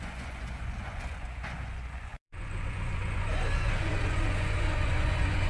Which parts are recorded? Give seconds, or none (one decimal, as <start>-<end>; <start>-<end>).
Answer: none